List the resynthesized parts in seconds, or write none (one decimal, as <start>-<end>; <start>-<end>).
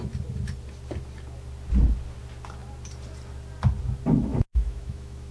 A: 4.3-5.3